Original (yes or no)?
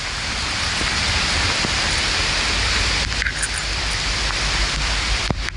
yes